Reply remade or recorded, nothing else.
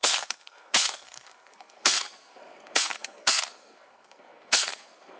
remade